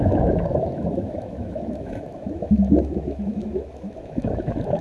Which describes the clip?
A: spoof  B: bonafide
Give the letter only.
A